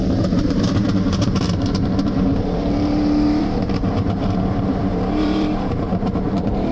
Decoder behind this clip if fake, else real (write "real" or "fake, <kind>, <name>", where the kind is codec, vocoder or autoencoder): fake, vocoder, BigVGAN v2